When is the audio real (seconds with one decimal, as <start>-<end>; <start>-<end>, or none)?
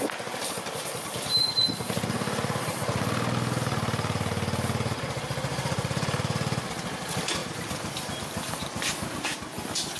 0.0-5.5; 6.2-7.4; 7.9-10.0